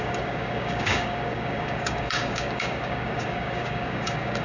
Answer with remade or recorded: remade